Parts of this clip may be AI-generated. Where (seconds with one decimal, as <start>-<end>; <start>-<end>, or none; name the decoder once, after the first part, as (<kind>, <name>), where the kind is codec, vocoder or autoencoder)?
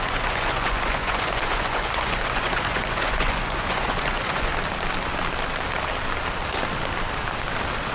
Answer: 0.0-4.5 (vocoder, Vocos)